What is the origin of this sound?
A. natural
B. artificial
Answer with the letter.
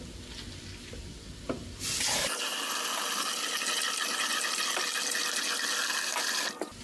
A